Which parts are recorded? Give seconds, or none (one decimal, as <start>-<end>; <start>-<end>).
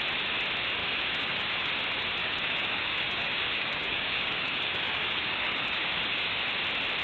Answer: 0.0-0.8; 1.7-2.2; 6.4-7.0